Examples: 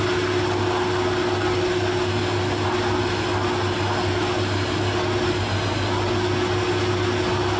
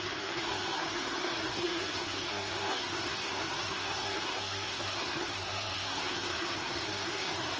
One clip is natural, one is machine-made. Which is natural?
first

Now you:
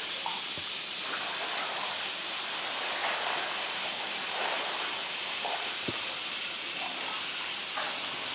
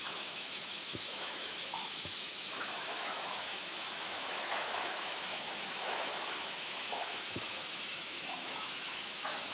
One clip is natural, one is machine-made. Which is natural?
first